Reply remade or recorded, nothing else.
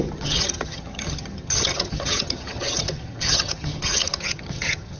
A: remade